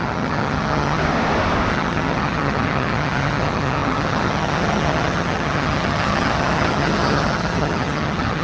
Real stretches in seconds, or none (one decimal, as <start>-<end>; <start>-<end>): 1.0-1.7